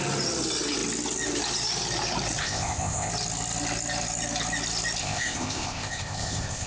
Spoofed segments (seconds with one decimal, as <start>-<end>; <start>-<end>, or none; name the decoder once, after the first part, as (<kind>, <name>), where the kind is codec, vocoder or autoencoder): 2.4-3.1 (codec, ZipCodec); 5.0-6.7